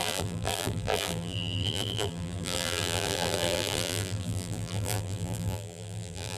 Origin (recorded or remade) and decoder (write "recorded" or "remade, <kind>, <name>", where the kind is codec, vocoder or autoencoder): remade, vocoder, BigVGAN v2